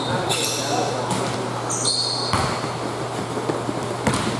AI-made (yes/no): no